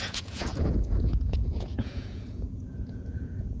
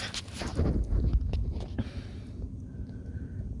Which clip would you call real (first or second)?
second